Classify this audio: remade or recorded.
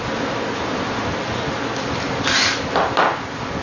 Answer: recorded